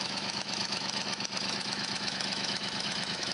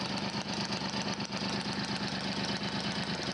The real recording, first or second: second